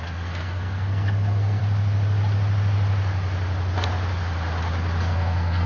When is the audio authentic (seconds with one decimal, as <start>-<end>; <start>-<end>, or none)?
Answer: 1.6-5.0